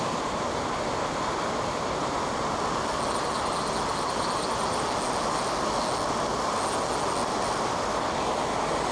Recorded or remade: recorded